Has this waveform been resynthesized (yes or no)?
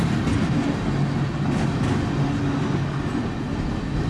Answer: no